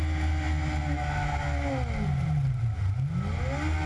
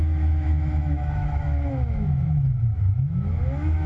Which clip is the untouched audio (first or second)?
first